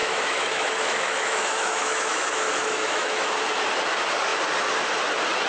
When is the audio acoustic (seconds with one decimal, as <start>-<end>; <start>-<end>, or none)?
3.3-5.5